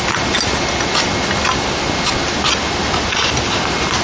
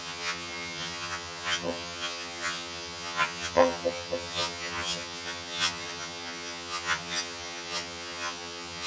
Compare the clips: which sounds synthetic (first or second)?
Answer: second